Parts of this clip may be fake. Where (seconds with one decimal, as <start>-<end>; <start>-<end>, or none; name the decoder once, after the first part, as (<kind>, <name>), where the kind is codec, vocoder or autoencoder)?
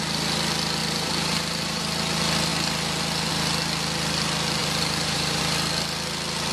0.8-1.8 (vocoder, BigVGAN v2); 4.6-5.4